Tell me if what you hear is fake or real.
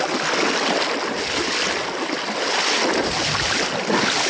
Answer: real